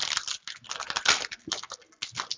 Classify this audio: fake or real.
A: real